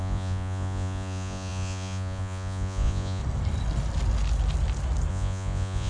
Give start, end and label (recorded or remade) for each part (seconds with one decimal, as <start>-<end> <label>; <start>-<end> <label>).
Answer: 0.0-3.2 remade; 3.2-5.1 recorded; 5.1-5.9 remade